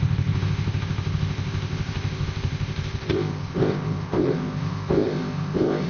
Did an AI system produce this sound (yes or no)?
yes